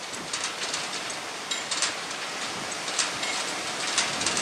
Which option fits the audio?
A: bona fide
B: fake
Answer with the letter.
B